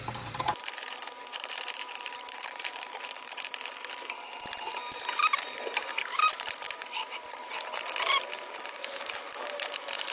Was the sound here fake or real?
fake